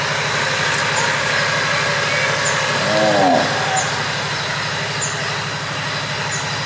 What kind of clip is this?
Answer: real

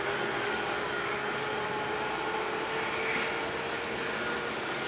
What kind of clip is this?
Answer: real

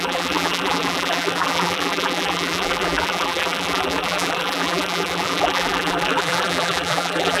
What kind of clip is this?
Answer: fake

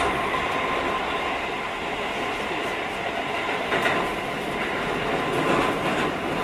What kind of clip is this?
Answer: real